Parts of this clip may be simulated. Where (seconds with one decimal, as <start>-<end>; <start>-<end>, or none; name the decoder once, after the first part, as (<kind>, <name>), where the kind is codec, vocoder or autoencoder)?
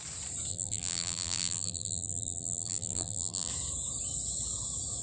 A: 0.5-3.5 (vocoder, BigVGAN v2)